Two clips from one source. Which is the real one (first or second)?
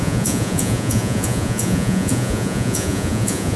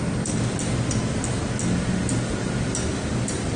second